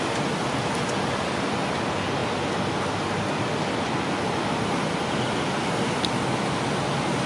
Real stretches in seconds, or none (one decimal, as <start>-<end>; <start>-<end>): 0.0-7.3